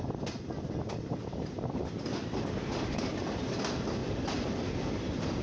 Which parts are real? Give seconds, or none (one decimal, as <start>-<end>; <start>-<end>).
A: 0.0-5.4